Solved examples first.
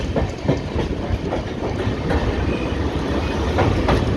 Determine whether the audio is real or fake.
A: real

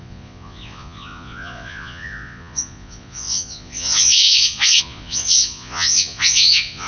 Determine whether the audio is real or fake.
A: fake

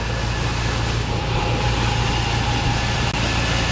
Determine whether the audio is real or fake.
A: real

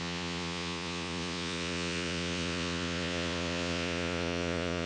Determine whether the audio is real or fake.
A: fake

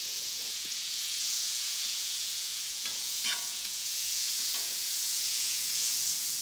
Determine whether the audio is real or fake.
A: fake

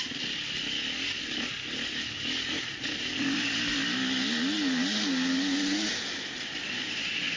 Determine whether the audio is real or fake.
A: real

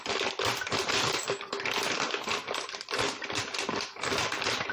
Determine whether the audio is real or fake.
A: real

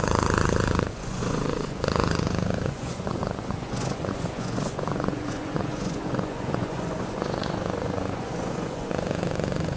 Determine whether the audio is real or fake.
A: fake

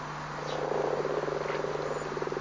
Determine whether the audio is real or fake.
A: real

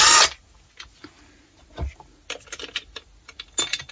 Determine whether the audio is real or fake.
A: real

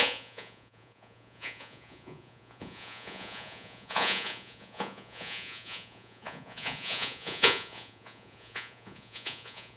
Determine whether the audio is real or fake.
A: fake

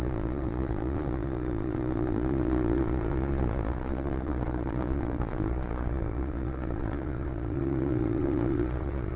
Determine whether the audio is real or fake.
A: fake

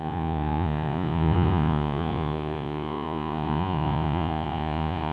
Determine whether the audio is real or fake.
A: fake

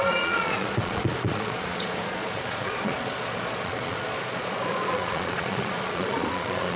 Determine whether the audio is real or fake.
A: fake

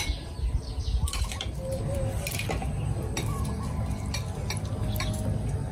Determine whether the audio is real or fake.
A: real